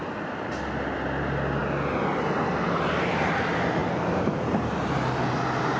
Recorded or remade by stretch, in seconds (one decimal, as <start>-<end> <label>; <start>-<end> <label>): 0.0-5.8 recorded